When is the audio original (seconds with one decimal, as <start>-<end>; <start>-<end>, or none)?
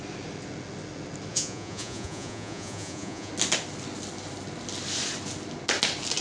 0.0-1.3; 3.3-6.2